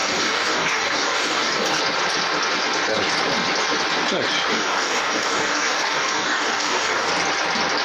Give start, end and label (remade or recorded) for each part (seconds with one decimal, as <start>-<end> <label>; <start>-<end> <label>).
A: 0.0-1.8 remade; 1.8-4.5 recorded; 4.5-7.1 remade; 7.1-7.8 recorded